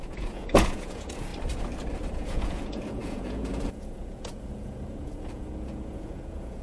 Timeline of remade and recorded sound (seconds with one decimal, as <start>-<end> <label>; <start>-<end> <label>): 0.0-1.3 remade; 1.3-2.1 recorded; 2.1-6.6 remade